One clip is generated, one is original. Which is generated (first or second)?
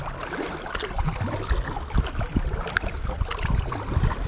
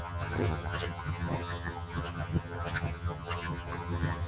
second